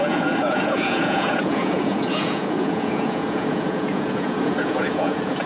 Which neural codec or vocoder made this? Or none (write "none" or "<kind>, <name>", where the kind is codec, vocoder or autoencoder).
vocoder, Vocos